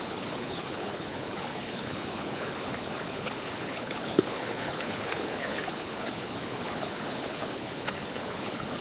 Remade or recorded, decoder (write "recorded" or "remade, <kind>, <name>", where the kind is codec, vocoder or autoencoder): remade, codec, HILCodec